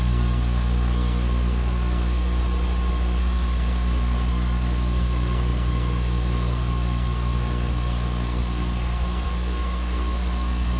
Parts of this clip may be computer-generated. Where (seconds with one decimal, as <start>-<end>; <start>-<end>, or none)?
0.0-2.4; 2.9-10.8

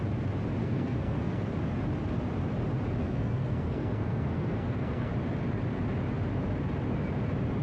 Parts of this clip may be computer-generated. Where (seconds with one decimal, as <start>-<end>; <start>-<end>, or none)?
0.6-1.4; 3.0-5.1